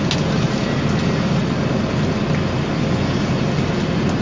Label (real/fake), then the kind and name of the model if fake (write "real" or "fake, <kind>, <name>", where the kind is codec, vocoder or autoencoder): real